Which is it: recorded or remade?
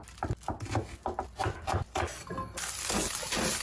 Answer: recorded